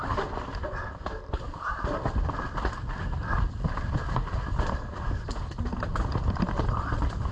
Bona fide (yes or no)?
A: yes